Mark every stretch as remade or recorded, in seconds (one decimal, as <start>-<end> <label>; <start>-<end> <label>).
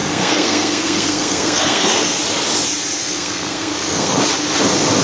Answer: 0.0-2.2 remade; 2.2-3.0 recorded; 3.0-4.2 remade; 4.2-5.0 recorded